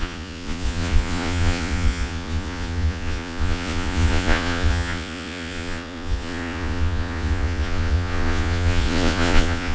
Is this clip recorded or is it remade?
remade